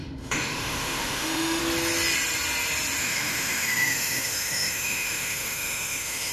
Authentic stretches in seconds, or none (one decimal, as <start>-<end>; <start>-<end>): 1.6-3.0

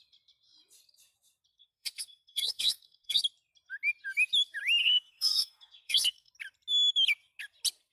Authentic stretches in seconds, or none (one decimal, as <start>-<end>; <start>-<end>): 0.0-1.5; 3.2-4.8; 6.3-7.9

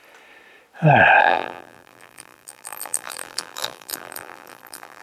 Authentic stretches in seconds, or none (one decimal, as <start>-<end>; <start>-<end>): 0.0-1.2

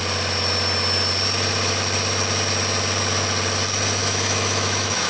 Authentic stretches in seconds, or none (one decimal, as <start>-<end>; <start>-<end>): 0.0-4.0